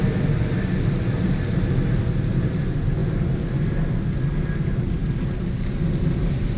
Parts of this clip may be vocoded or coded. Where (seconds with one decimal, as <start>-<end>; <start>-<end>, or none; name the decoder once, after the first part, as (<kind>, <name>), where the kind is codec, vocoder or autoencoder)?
none